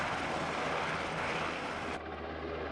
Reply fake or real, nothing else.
real